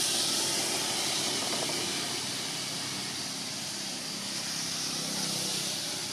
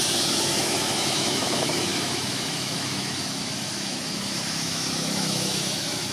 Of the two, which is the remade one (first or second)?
second